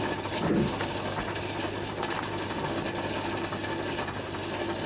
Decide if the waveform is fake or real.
real